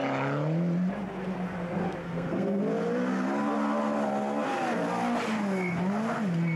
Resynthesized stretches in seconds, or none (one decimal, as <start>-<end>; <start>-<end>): 2.0-2.6